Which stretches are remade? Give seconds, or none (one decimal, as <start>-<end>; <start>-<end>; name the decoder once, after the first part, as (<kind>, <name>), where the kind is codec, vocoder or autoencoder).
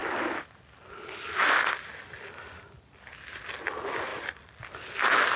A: 4.1-4.6 (vocoder, BigVGAN v2)